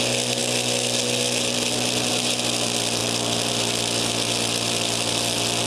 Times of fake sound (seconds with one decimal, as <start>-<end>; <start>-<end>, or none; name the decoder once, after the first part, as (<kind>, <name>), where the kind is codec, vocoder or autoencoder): none